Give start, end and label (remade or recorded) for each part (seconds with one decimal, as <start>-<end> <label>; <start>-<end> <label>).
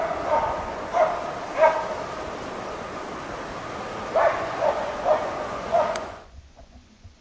0.0-0.9 remade; 0.9-4.3 recorded; 4.3-7.2 remade